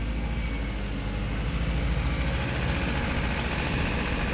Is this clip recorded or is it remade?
recorded